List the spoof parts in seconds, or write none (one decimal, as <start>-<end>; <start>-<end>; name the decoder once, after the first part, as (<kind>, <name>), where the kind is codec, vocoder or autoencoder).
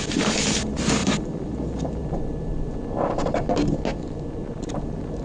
1.0-2.5 (vocoder, BigVGAN v2); 3.9-4.4